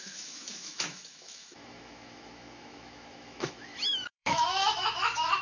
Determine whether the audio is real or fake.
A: fake